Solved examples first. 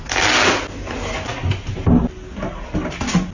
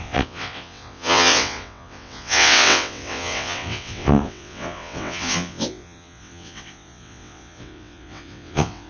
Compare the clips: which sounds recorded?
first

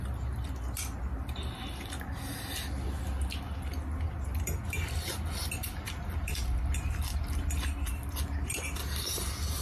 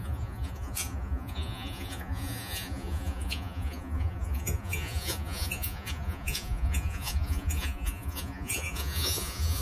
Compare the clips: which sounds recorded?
first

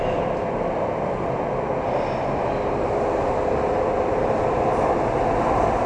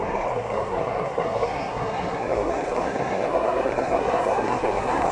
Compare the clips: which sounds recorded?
first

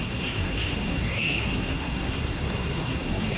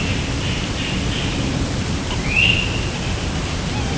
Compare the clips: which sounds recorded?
second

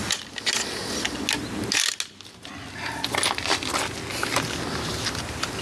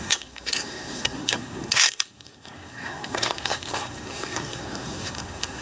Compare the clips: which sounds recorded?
first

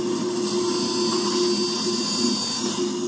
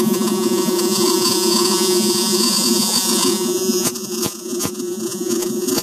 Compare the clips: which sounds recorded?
first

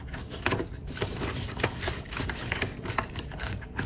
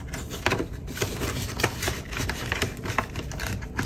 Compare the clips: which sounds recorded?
second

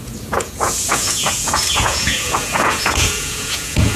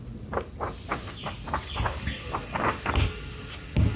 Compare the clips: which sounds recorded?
second